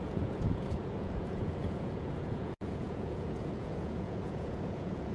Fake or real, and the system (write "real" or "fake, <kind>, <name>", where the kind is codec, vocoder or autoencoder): fake, vocoder, Vocos